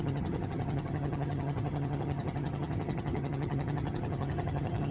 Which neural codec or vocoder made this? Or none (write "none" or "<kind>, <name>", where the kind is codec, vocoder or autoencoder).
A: vocoder, HiFi-GAN